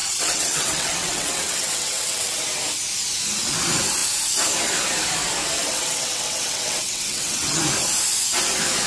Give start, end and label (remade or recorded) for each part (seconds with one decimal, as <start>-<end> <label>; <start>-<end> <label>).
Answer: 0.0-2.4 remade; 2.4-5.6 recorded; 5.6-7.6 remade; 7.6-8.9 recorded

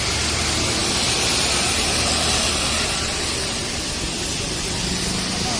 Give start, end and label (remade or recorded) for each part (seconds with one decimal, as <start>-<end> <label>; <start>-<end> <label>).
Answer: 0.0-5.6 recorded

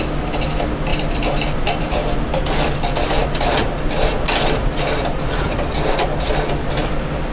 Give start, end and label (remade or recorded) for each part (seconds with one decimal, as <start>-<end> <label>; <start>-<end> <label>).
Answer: 0.0-0.9 recorded; 0.9-2.4 remade; 2.4-3.6 recorded; 3.6-5.5 remade; 5.5-7.3 recorded